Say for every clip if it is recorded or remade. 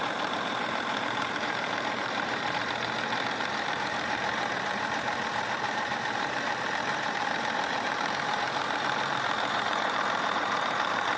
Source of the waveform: remade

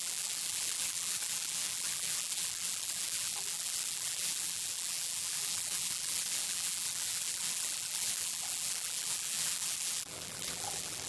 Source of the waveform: remade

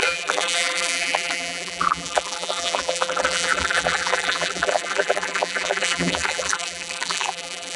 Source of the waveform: remade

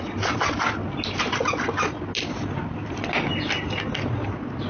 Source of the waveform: recorded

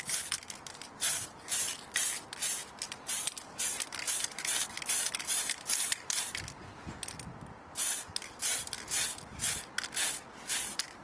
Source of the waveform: recorded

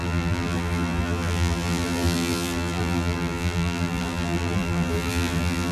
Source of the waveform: remade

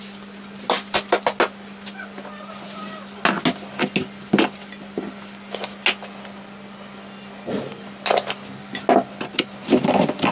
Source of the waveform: recorded